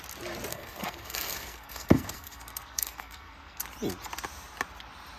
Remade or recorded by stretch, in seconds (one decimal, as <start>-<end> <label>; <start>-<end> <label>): 0.0-0.5 recorded; 0.5-3.6 remade; 3.6-5.2 recorded